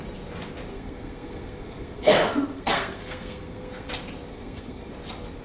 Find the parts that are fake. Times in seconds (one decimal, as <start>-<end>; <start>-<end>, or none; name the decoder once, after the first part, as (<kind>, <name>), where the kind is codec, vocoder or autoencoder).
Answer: 0.7-3.9 (codec, SNAC); 4.3-4.9